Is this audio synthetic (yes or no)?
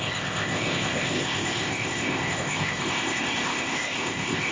yes